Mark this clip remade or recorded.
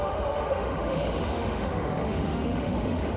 remade